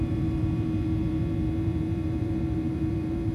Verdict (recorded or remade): remade